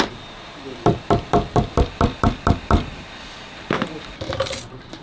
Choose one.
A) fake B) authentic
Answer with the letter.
A